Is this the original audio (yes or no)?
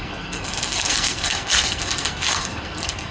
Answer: no